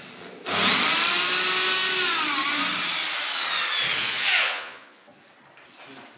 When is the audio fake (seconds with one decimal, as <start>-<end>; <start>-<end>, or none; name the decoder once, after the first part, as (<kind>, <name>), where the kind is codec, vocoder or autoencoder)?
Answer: 4.0-5.2 (vocoder, Vocos)